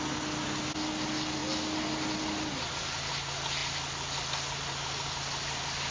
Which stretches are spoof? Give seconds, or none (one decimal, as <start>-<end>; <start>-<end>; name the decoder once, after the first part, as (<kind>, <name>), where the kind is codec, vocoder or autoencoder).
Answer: none